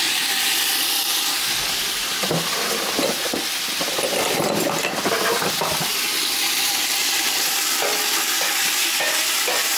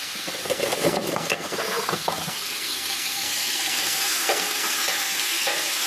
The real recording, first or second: first